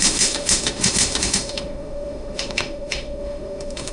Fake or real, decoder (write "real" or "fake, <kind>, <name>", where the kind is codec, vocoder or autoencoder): fake, autoencoder, DAC-VAE